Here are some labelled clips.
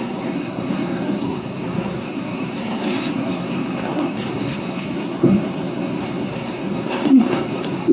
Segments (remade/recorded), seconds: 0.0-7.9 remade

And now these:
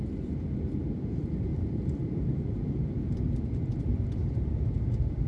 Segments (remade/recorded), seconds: 0.0-1.5 recorded; 1.5-4.7 remade; 4.7-5.3 recorded

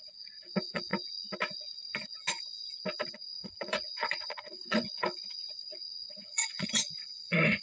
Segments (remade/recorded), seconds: 0.0-0.9 remade; 0.9-3.1 recorded; 3.1-7.6 remade

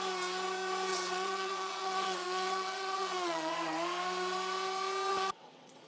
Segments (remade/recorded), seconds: 0.0-0.9 recorded; 0.9-3.5 remade; 3.5-5.1 recorded; 5.1-5.9 remade

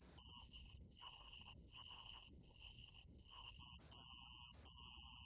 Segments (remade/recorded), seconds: 0.0-0.4 recorded; 0.4-3.6 remade; 3.6-5.3 recorded

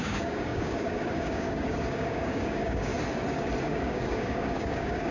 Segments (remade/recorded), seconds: 0.0-2.9 remade; 2.9-3.6 recorded; 3.6-5.1 remade